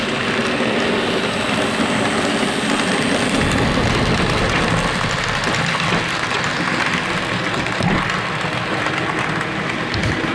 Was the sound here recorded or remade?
recorded